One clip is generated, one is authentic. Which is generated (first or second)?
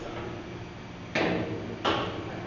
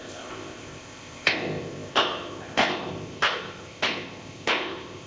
second